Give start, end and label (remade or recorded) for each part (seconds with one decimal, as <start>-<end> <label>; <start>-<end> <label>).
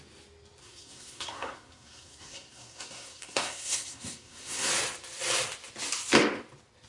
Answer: 0.0-0.6 recorded; 0.6-4.7 remade; 4.7-6.9 recorded